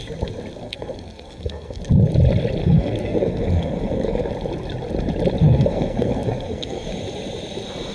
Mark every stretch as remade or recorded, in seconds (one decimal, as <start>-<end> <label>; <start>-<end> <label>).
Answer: 0.0-0.6 recorded; 0.6-1.8 remade; 1.8-2.6 recorded; 2.6-4.3 remade; 4.3-5.4 recorded; 5.4-6.9 remade; 6.9-7.9 recorded